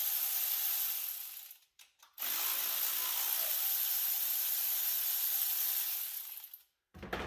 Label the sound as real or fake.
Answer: real